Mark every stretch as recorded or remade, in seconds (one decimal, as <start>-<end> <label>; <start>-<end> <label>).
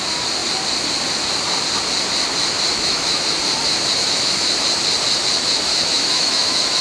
0.0-2.7 recorded; 2.7-3.3 remade; 3.3-4.0 recorded; 4.0-4.5 remade; 4.5-5.7 recorded; 5.7-6.8 remade